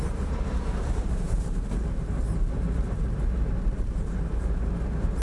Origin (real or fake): fake